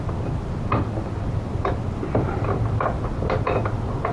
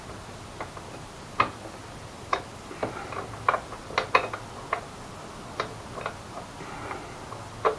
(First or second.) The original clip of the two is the second